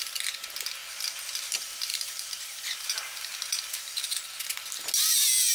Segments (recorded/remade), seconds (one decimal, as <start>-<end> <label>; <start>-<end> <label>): 0.0-1.9 recorded; 1.9-4.3 remade; 4.3-5.5 recorded